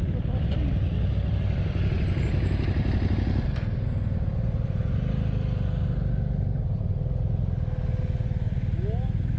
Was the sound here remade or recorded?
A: recorded